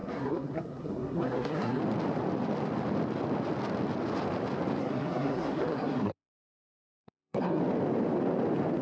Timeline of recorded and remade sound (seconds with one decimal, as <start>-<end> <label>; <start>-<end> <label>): 0.0-1.8 remade; 1.8-4.8 recorded; 4.8-7.6 remade; 7.6-8.8 recorded